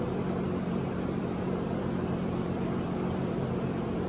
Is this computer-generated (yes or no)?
yes